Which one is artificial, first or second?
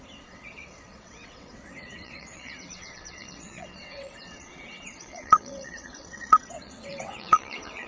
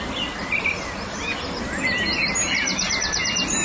first